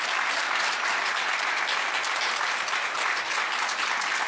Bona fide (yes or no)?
yes